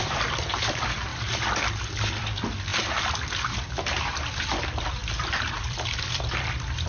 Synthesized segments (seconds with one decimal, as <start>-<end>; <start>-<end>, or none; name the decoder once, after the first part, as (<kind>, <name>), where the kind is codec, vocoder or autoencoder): 0.0-6.9 (vocoder, BigVGAN v2)